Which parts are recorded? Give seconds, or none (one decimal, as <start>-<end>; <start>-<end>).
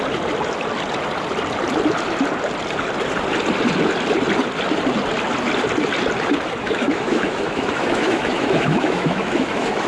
0.0-6.6